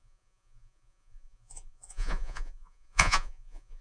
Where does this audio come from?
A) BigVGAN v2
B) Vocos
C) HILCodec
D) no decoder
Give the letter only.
B